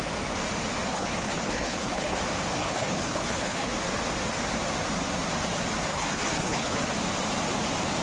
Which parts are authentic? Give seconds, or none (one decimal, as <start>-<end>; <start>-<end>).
0.0-0.9; 2.2-2.6; 3.7-5.9; 6.8-8.0